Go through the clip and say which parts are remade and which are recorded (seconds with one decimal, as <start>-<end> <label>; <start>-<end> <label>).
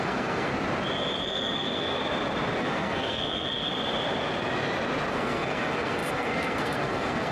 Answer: 0.0-0.5 remade; 0.5-1.2 recorded; 1.2-2.0 remade; 2.0-2.6 recorded; 2.6-3.7 remade; 3.7-5.1 recorded; 5.1-7.3 remade